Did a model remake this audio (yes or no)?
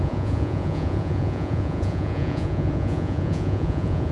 yes